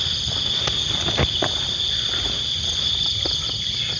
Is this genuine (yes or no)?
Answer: yes